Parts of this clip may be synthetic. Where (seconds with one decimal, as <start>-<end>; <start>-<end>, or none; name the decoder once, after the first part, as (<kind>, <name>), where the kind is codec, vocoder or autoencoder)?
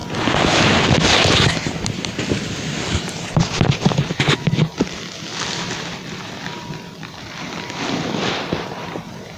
5.3-9.4 (vocoder, BigVGAN v2)